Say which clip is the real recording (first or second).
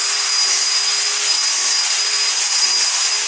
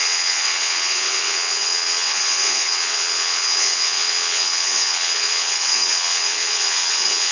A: first